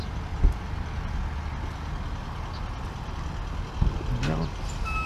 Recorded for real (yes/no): yes